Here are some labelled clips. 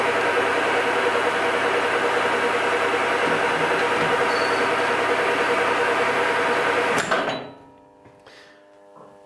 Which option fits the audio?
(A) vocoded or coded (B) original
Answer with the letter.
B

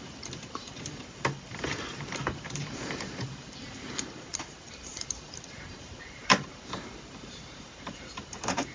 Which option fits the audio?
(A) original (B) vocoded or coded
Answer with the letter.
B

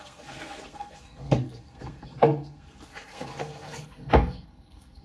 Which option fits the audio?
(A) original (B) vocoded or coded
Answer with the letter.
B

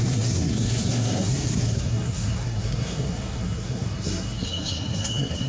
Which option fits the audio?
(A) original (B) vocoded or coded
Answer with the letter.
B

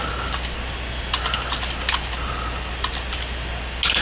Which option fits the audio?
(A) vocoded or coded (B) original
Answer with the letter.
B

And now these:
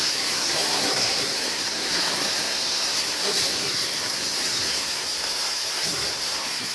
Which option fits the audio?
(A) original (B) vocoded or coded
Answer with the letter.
B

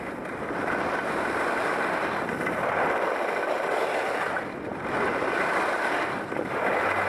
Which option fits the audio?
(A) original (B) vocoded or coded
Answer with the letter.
A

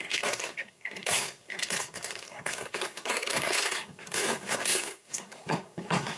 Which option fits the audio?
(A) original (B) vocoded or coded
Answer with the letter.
B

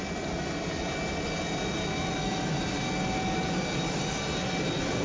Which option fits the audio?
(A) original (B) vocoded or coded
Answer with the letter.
A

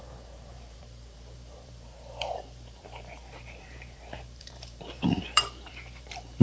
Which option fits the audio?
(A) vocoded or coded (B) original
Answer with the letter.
A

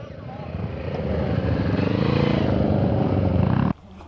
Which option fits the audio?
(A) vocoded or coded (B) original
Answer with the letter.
A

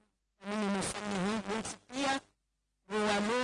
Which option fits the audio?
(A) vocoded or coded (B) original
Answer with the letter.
B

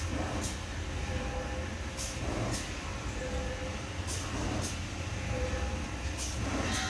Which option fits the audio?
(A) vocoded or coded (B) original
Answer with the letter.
B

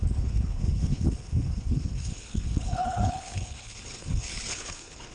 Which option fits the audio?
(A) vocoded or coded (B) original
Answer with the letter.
A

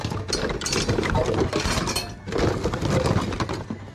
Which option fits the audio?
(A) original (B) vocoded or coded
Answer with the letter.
A